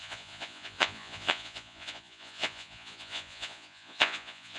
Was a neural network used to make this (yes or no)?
yes